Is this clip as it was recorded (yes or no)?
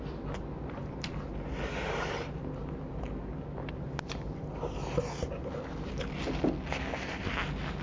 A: yes